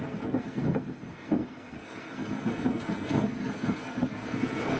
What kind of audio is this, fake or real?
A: fake